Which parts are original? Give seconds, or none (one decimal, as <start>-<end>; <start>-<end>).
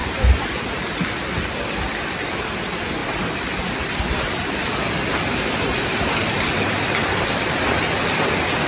none